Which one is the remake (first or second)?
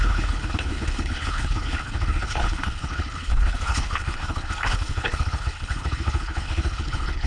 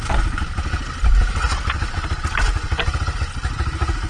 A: first